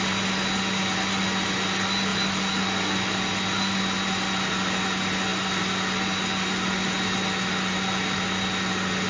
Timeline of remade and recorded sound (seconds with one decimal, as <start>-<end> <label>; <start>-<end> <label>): 0.0-9.1 recorded